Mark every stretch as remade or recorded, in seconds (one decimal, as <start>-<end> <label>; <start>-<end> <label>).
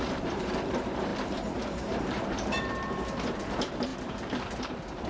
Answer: 0.0-5.1 remade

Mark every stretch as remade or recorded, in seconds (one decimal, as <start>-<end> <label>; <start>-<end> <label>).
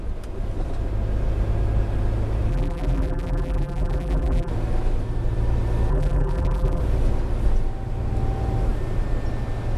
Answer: 0.0-2.5 recorded; 2.5-4.5 remade; 4.5-5.9 recorded; 5.9-6.8 remade; 6.8-9.8 recorded